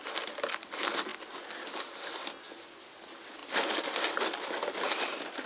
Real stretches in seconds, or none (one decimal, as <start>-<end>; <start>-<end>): 0.0-5.5